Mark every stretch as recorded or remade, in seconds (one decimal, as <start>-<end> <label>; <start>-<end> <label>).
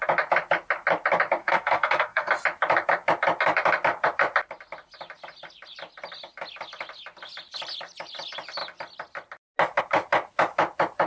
0.0-1.4 recorded; 1.4-2.3 remade; 2.3-11.1 recorded